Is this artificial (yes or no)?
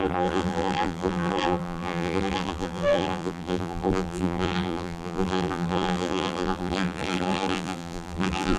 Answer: yes